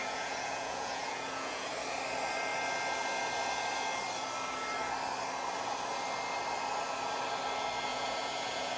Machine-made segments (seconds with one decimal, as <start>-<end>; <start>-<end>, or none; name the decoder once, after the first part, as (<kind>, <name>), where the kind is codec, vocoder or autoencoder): 0.0-1.7 (vocoder, Vocos); 7.9-8.8